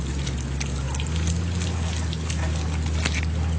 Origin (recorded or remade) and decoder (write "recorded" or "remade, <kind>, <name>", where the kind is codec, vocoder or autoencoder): recorded